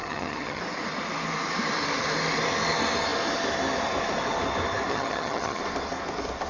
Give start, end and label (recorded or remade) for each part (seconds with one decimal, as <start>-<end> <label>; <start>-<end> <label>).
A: 0.0-0.6 remade; 0.6-4.9 recorded; 4.9-5.6 remade; 5.6-6.5 recorded